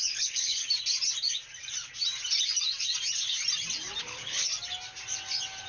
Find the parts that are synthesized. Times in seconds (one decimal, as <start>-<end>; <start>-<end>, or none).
0.0-0.6; 4.0-4.5